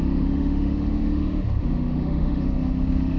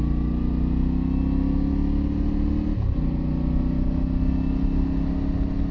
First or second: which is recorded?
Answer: second